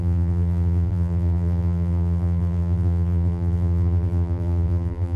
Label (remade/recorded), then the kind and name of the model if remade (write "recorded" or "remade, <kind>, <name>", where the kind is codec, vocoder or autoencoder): remade, vocoder, BigVGAN v2